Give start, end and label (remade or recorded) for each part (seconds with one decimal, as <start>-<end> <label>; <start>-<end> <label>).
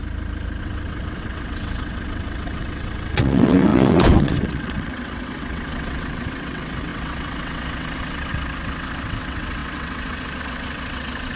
0.0-0.6 recorded; 0.6-11.4 remade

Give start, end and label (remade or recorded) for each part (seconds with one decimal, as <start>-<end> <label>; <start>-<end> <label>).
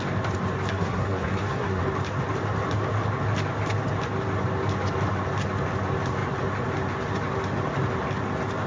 0.0-0.7 recorded; 0.7-1.8 remade; 1.8-8.7 recorded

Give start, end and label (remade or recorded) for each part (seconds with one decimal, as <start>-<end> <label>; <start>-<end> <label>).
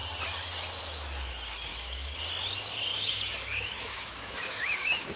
0.0-1.7 recorded; 1.7-2.2 remade; 2.2-2.9 recorded; 2.9-5.2 remade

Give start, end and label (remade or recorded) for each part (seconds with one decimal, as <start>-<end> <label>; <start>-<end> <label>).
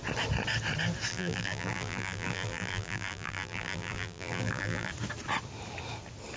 0.0-1.1 recorded; 1.1-4.9 remade; 4.9-6.4 recorded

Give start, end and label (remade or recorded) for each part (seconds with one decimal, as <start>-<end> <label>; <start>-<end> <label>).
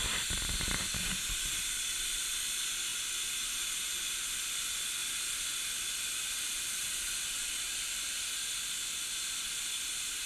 0.0-5.0 recorded; 5.0-6.7 remade; 6.7-10.3 recorded